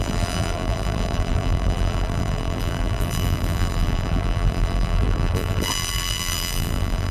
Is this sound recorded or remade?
remade